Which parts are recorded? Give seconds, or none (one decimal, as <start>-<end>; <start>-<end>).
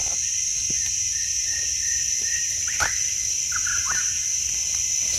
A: 0.0-1.9